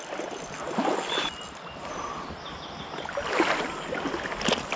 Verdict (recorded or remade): recorded